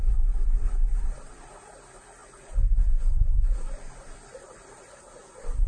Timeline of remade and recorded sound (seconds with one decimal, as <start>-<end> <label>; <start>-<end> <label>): 0.0-5.7 recorded